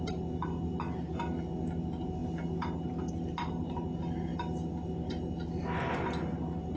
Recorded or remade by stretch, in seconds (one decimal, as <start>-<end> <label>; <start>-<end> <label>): 0.0-6.8 recorded